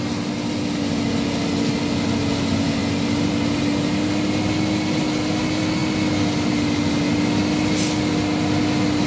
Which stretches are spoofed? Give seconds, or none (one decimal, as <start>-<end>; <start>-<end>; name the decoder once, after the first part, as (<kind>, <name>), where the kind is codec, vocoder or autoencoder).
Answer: none